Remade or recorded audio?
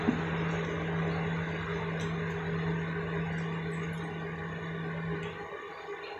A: recorded